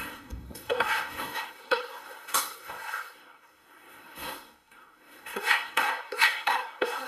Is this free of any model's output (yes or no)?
no